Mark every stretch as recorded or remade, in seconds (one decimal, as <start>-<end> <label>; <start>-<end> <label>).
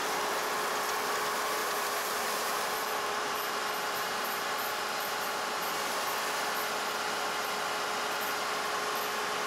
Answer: 0.0-0.5 remade; 0.5-1.6 recorded; 1.6-5.7 remade; 5.7-9.5 recorded